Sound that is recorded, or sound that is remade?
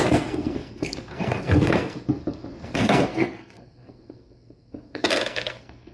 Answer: remade